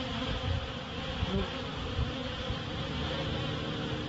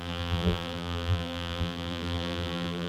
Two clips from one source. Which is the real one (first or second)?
first